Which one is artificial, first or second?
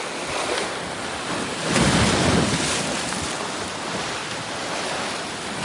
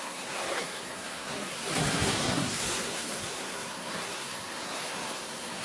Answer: second